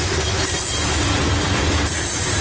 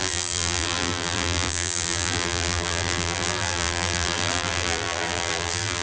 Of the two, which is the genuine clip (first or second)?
first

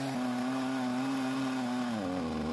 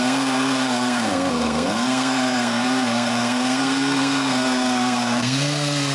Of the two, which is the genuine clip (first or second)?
first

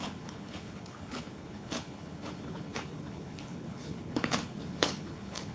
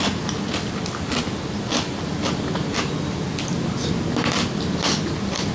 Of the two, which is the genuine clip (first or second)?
second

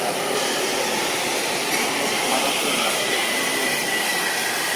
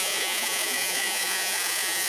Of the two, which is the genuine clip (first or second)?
first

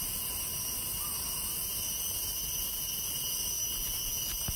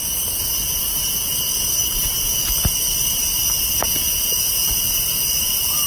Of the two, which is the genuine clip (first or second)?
first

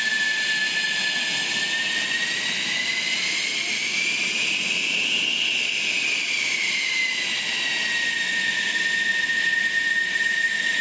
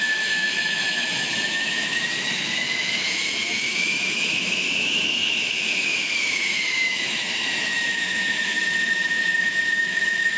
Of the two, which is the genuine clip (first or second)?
first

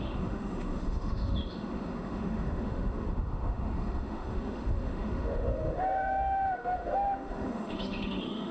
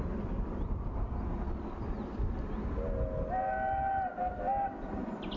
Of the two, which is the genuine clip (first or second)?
second